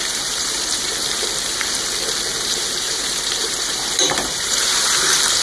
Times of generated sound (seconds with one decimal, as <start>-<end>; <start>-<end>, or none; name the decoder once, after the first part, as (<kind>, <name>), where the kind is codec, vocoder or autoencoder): 0.0-0.9 (vocoder, BigVGAN v2); 2.5-5.4